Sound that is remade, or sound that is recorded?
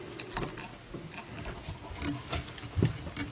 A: recorded